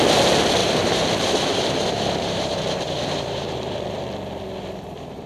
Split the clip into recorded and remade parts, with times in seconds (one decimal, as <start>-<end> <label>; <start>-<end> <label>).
0.0-0.6 recorded; 0.6-3.8 remade; 3.8-5.3 recorded